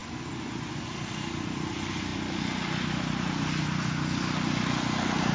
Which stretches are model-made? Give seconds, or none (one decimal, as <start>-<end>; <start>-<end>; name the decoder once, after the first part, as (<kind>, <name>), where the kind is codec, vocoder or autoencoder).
0.0-0.8 (vocoder, Vocos)